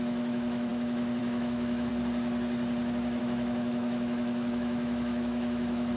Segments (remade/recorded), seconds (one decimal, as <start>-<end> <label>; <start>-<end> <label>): 0.0-1.9 remade; 1.9-3.2 recorded; 3.2-6.0 remade